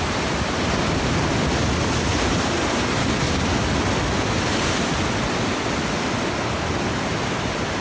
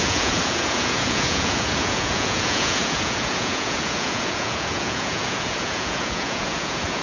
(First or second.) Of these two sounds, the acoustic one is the first